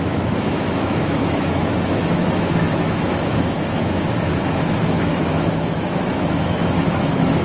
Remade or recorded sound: remade